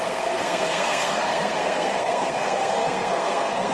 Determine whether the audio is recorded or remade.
remade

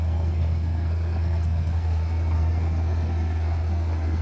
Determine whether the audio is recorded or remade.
remade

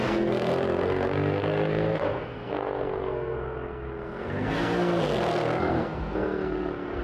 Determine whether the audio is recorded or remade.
remade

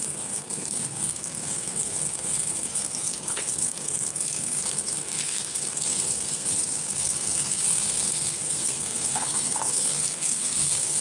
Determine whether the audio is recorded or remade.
remade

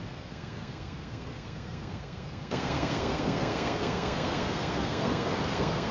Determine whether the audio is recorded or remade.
remade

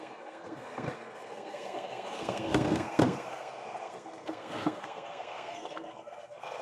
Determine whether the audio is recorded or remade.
remade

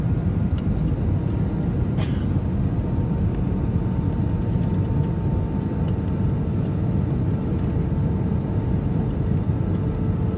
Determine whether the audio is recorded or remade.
recorded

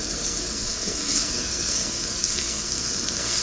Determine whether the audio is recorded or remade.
remade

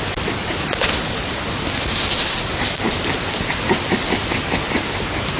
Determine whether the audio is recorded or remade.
recorded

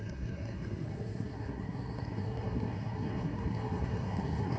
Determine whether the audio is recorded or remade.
remade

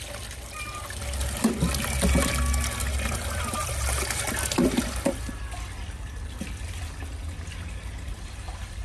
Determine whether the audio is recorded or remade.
recorded